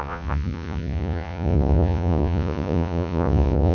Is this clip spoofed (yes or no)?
yes